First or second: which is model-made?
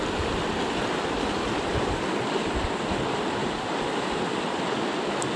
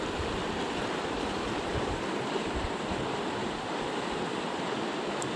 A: second